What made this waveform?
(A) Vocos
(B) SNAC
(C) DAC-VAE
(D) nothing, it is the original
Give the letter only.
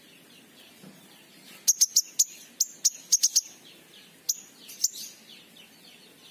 D